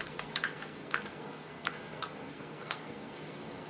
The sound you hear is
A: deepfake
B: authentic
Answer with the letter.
A